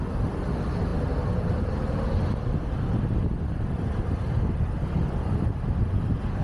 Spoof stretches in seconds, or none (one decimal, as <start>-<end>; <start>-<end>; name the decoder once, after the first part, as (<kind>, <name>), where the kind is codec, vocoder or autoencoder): 3.5-4.1 (vocoder, BigVGAN v2)